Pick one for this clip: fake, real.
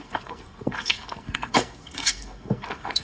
fake